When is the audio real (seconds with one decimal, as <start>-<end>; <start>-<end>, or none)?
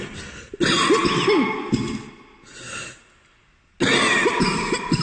0.0-5.0